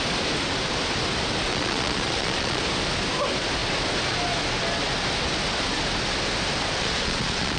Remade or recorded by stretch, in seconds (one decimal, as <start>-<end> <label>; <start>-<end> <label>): 0.0-1.5 recorded; 1.5-2.6 remade; 2.6-6.8 recorded; 6.8-7.6 remade